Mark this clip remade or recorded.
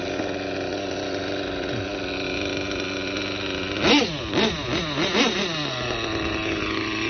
recorded